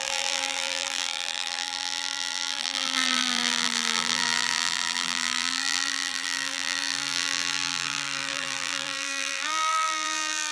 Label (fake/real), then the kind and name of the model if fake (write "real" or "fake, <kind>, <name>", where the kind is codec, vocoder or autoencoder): fake, vocoder, BigVGAN v2